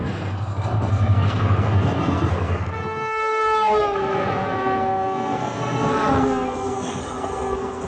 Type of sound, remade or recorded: remade